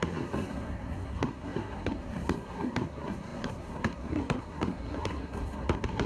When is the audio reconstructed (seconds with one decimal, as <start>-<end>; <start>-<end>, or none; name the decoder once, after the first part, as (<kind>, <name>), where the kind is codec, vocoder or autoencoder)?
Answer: 0.0-6.1 (codec, SNAC)